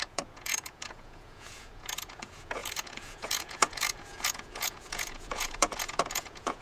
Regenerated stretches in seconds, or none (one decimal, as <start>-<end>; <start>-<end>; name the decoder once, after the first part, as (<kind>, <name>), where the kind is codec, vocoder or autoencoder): 0.0-6.6 (vocoder, Vocos)